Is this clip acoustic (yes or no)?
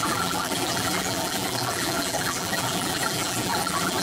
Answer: no